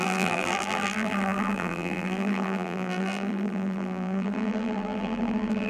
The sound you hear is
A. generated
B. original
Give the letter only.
A